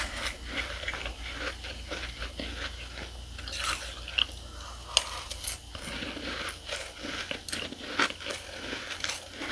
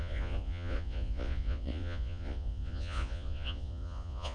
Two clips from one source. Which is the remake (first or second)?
second